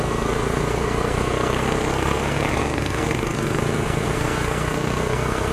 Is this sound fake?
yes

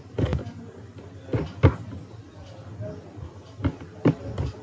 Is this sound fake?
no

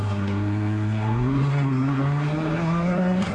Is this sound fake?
yes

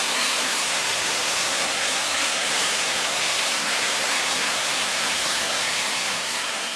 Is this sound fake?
yes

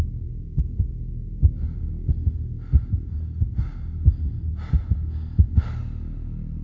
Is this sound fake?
no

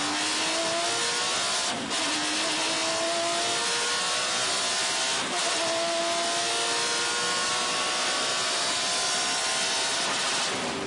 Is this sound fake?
no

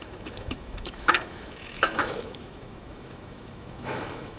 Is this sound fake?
yes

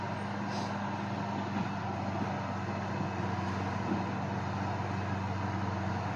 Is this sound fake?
no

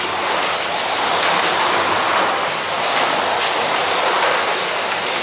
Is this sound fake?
no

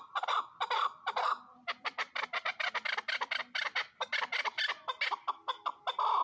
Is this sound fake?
no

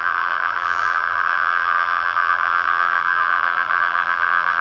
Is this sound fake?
yes